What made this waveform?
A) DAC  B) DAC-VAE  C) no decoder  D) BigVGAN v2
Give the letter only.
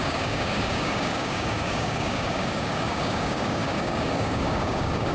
A